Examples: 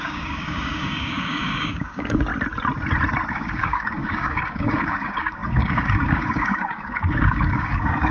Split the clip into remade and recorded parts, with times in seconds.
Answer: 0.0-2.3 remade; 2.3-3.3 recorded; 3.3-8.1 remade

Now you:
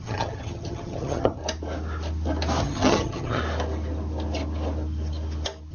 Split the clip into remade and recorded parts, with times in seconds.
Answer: 0.0-1.4 remade; 1.4-2.6 recorded; 2.6-3.4 remade; 3.4-5.7 recorded

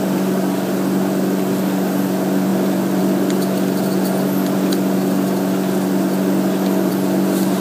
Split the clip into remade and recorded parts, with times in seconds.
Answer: 0.0-7.6 recorded

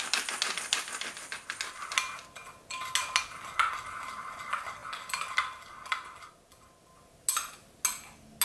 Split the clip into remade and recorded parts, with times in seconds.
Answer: 0.0-8.4 recorded

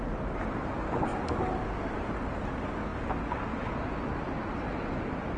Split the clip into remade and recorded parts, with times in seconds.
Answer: 0.0-1.1 recorded; 1.1-2.4 remade; 2.4-5.4 recorded